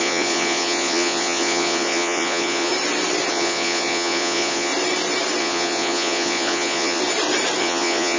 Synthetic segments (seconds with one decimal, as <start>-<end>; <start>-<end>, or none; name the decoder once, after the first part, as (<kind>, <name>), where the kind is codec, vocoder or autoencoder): 0.0-2.7 (vocoder, Vocos); 3.3-4.7; 5.4-7.0; 7.6-8.2